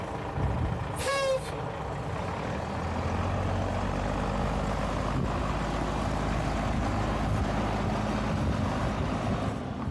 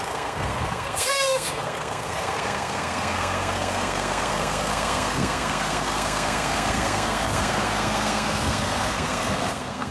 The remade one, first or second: second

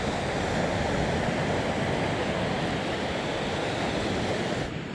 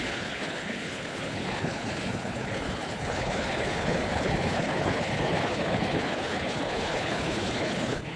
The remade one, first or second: second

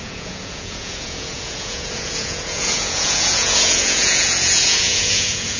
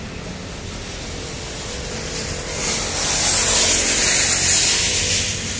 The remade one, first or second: first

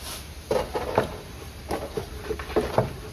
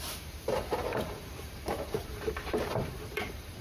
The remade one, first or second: second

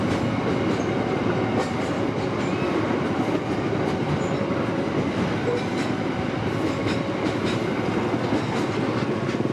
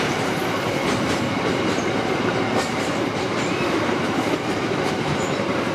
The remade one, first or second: second